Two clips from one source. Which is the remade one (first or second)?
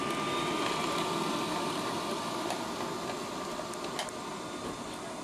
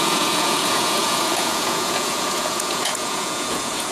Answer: second